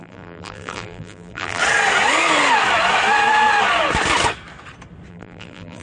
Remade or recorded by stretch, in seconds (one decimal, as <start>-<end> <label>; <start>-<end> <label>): 0.0-1.6 remade; 1.6-5.1 recorded; 5.1-5.8 remade